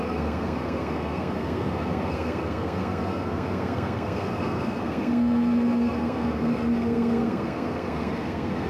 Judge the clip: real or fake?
fake